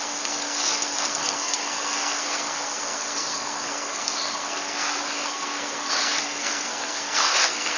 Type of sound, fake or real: fake